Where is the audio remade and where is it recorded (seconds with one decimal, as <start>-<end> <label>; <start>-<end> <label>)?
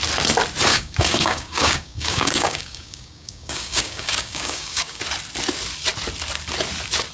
0.0-0.7 recorded; 0.7-5.0 remade; 5.0-7.1 recorded